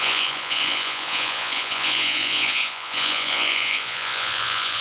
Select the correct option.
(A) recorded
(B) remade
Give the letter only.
B